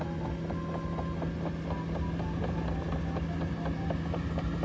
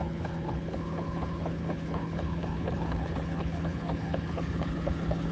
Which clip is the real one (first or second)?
first